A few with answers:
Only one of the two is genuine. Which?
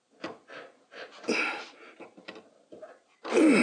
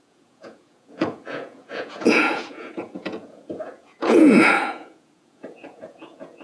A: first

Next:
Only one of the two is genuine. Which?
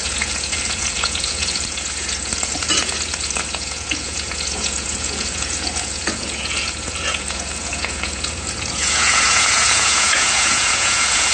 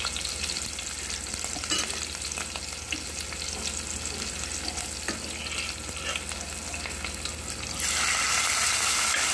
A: second